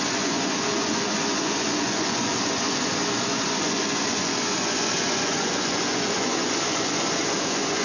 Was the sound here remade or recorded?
remade